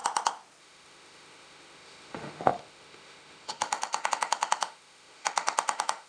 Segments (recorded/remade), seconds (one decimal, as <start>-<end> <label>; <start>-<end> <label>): 0.0-0.6 recorded; 0.6-6.1 remade